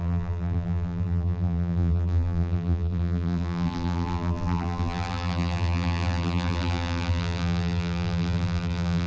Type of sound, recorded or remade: remade